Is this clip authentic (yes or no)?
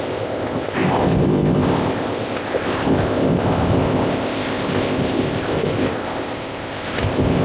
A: no